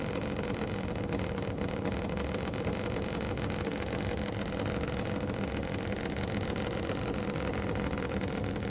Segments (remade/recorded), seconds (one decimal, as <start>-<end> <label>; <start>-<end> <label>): 0.0-8.7 recorded